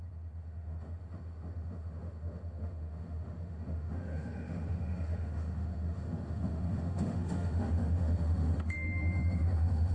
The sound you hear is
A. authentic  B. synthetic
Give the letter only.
B